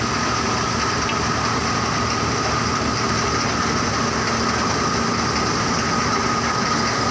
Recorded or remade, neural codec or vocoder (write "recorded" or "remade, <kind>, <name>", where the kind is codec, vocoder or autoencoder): recorded